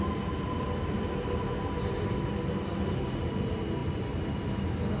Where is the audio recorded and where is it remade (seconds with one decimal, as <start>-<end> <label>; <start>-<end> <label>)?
0.0-5.0 recorded